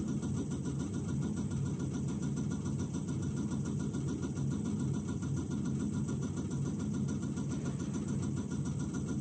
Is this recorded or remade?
recorded